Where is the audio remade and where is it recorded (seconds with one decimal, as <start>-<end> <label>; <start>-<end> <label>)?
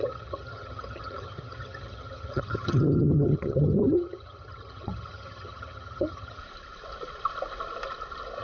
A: 0.0-6.4 remade; 6.4-8.4 recorded